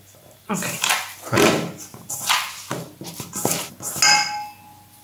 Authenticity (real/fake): real